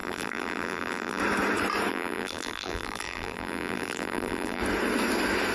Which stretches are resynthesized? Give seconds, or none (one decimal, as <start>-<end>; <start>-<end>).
0.0-1.2; 1.9-4.6